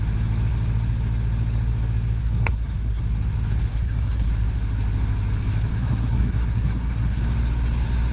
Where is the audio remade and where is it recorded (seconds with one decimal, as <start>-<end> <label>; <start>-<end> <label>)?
0.0-2.2 recorded; 2.2-3.0 remade; 3.0-3.7 recorded; 3.7-4.3 remade; 4.3-5.7 recorded; 5.7-7.2 remade; 7.2-8.1 recorded